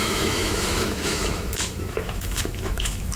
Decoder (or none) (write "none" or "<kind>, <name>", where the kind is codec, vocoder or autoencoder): autoencoder, DAC-VAE